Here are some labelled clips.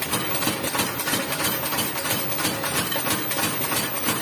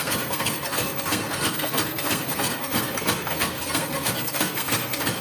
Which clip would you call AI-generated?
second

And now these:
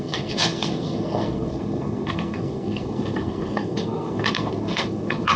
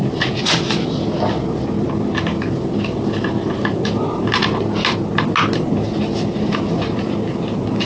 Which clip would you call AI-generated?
first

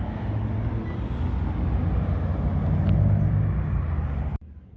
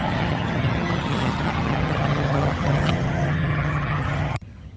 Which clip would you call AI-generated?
second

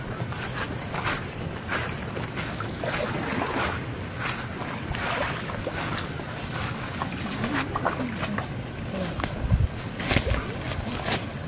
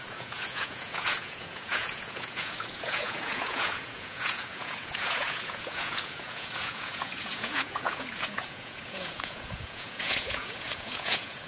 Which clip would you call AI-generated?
second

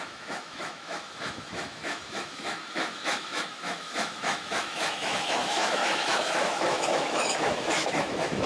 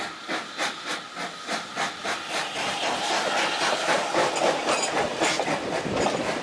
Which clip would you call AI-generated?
first